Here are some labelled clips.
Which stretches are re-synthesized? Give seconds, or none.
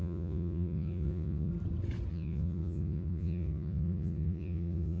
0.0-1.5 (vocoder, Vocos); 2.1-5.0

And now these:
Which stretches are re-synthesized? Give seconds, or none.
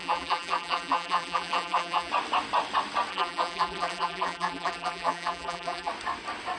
0.0-2.1 (vocoder, BigVGAN v2); 3.1-5.9